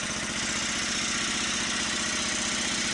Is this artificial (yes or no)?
no